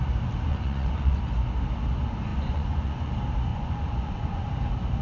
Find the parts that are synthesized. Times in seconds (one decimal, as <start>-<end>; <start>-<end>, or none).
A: 0.5-1.2; 2.3-3.1; 3.5-4.5